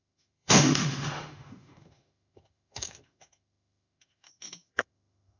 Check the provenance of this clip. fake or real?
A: fake